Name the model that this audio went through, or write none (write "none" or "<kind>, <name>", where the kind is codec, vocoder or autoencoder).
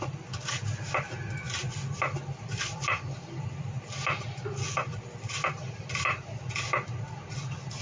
none